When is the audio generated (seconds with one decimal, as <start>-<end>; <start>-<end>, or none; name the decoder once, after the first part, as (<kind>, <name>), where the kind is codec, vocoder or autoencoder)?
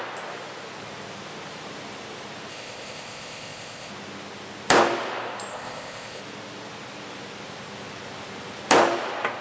2.5-3.9 (codec, ZipCodec); 5.5-6.2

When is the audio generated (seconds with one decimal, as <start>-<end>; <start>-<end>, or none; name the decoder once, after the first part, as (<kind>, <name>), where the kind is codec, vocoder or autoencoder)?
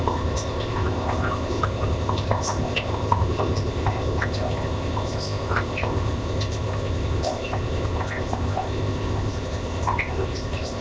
0.0-10.8 (codec, ZipCodec)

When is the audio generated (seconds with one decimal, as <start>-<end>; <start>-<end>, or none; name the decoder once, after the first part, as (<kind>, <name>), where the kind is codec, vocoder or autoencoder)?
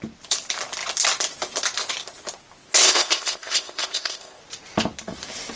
2.7-4.4 (codec, ZipCodec)